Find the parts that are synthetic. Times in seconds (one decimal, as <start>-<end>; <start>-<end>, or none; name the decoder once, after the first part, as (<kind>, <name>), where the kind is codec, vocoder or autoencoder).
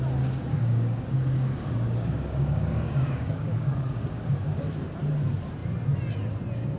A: 0.5-4.6 (codec, DAC)